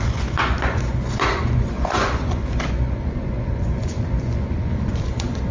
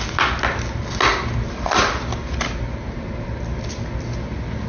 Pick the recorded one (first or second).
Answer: second